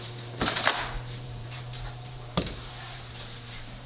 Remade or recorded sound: remade